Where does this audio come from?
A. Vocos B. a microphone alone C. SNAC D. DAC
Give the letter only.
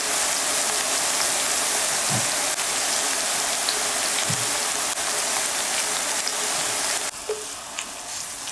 B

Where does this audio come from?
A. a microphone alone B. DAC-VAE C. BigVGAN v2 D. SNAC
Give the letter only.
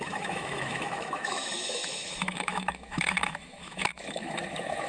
B